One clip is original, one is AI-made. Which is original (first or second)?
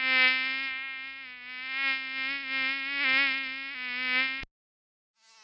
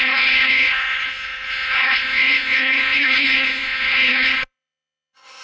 first